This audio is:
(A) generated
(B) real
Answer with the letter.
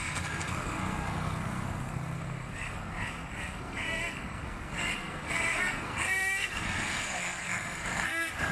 A